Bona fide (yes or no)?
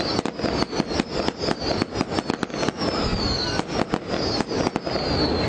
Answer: yes